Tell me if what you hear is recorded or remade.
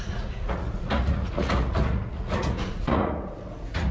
remade